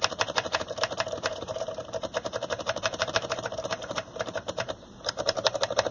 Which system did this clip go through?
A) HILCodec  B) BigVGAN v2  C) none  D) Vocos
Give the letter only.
B